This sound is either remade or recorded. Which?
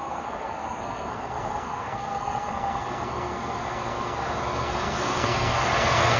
remade